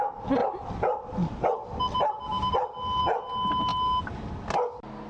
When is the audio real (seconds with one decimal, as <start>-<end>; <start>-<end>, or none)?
0.0-5.1